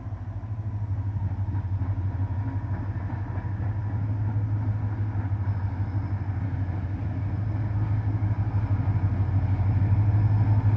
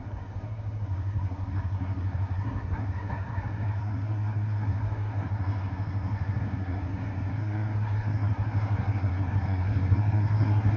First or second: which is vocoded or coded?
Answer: second